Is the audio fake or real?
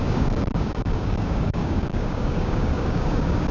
fake